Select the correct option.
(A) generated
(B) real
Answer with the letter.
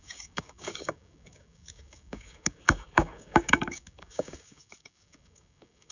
A